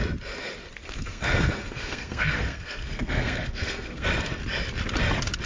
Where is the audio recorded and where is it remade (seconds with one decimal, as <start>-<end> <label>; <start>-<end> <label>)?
0.0-0.8 recorded; 0.8-4.1 remade; 4.1-5.5 recorded

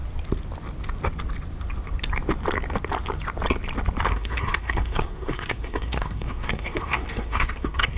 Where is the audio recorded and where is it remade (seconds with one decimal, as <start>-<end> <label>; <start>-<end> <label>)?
0.0-4.1 recorded; 4.1-8.0 remade

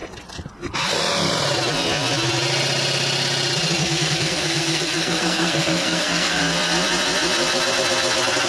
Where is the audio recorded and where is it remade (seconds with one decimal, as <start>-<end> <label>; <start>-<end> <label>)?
0.0-3.8 recorded; 3.8-6.4 remade; 6.4-8.5 recorded

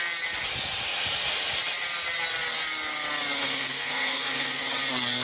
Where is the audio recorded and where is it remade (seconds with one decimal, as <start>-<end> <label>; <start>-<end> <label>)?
0.0-3.4 recorded; 3.4-4.6 remade; 4.6-5.2 recorded

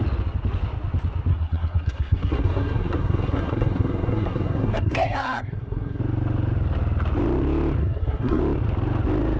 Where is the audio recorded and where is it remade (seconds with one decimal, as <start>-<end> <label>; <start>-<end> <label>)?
0.0-1.3 recorded; 1.3-6.0 remade; 6.0-7.8 recorded; 7.8-8.4 remade; 8.4-9.4 recorded